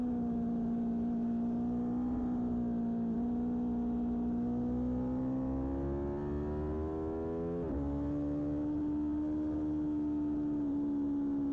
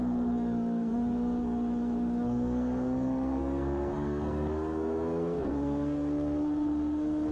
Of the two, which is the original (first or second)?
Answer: first